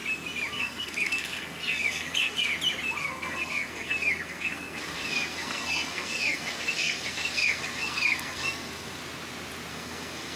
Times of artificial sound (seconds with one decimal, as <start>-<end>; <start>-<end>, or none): 0.5-2.5; 3.0-9.0; 9.7-10.4